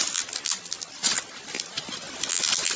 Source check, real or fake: real